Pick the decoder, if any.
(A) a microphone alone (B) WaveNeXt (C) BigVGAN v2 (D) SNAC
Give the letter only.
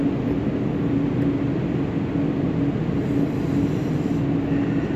A